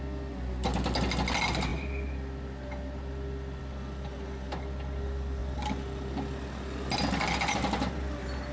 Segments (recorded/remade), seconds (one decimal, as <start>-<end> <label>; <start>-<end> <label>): 0.0-8.5 recorded